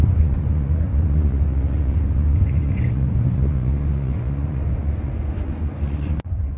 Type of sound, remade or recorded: remade